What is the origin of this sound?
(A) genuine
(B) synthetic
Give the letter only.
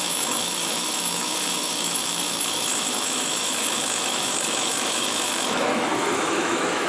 B